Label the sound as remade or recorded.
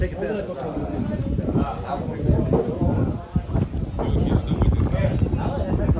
recorded